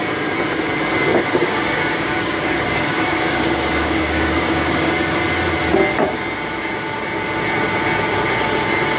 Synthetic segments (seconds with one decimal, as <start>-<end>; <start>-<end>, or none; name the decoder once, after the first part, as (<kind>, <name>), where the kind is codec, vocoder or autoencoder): 1.1-5.0 (codec, DAC)